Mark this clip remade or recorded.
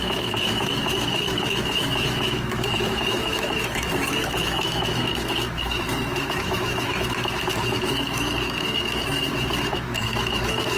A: remade